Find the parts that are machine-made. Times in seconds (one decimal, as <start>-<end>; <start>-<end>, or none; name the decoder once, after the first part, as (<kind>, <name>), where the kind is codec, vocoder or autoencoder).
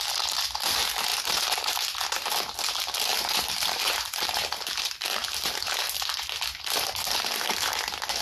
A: 1.1-1.7 (vocoder, BigVGAN v2); 3.1-5.7